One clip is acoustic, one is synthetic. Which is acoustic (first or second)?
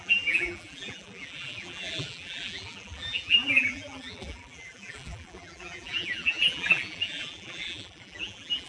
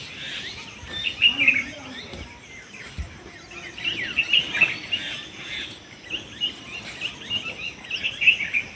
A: second